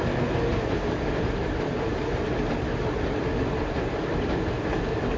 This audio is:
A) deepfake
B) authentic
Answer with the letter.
A